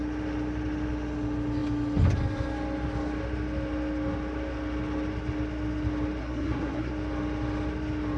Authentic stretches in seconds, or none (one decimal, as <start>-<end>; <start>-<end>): 0.0-6.2; 6.9-8.2